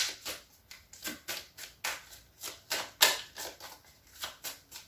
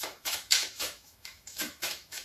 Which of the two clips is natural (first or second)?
first